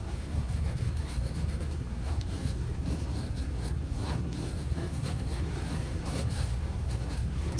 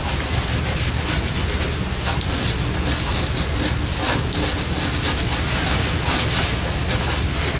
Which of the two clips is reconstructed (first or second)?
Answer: first